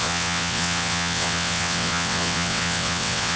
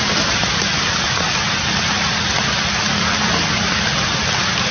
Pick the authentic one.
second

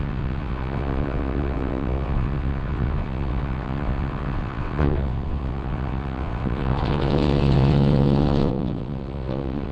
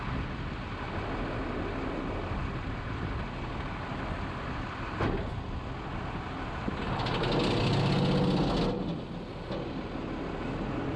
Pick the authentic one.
second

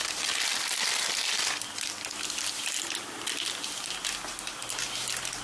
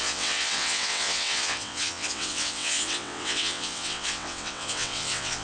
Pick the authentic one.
first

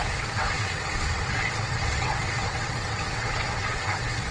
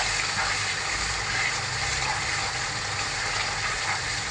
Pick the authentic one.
second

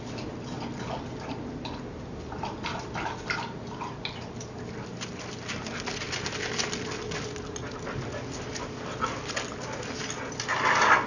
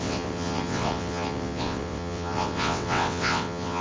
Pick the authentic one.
first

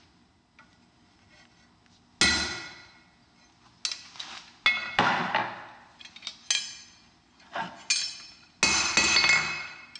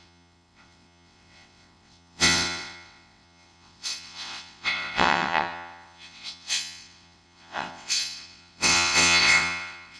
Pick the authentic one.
first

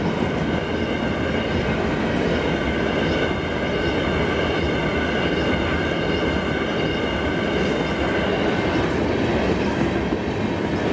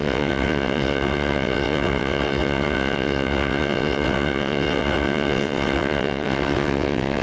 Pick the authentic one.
first